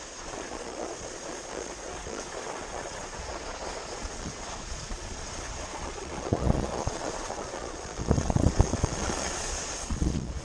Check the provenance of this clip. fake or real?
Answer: fake